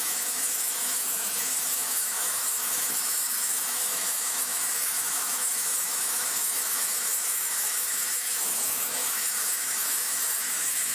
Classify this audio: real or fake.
fake